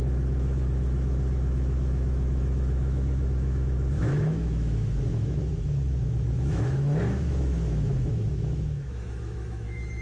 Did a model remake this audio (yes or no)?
yes